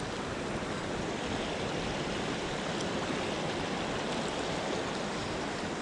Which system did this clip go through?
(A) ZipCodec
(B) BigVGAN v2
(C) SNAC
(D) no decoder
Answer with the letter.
D